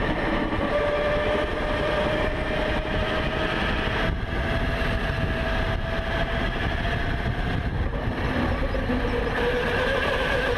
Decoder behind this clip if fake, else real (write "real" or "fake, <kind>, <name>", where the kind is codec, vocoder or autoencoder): real